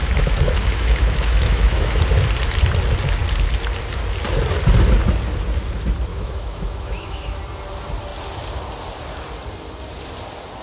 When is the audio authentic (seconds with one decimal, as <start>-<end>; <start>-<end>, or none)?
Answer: 2.0-6.1; 7.4-10.6